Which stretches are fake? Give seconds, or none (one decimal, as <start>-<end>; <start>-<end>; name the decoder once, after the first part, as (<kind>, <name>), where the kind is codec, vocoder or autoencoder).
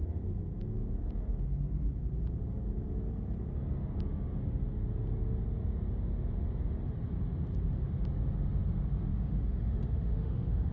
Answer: 9.1-10.7 (autoencoder, DAC-VAE)